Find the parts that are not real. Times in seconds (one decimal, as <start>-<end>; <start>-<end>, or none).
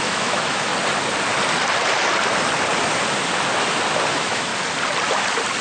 0.0-0.7; 4.1-4.5